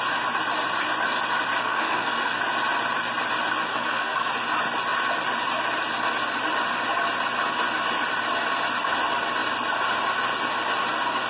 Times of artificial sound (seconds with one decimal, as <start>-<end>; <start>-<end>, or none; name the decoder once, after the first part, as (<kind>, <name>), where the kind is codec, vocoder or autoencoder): 1.6-2.4 (codec, SNAC); 3.7-4.3